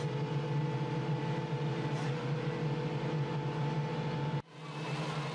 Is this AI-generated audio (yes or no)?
no